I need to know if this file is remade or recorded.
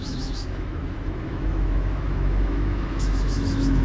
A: remade